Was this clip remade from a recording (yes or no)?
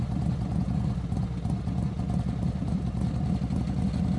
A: no